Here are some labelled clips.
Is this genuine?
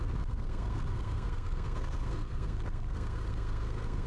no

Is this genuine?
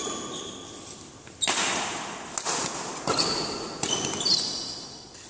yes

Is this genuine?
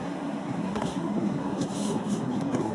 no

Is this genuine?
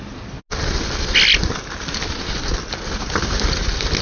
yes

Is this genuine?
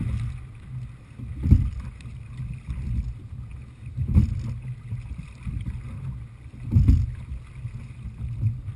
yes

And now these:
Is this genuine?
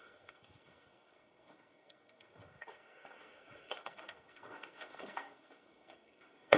no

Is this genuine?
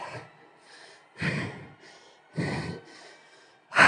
yes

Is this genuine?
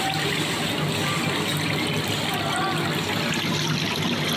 yes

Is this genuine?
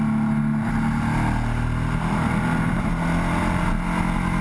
yes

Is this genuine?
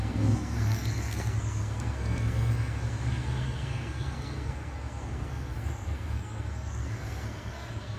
no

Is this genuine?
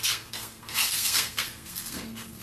no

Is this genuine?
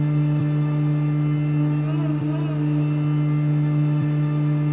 yes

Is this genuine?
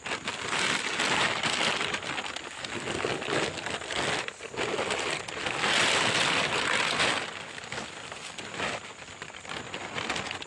yes